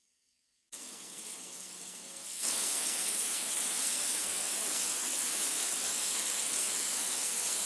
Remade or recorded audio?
remade